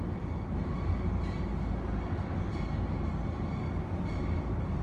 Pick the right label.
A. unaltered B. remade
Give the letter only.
A